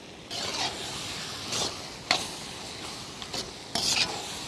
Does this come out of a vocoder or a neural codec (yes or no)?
no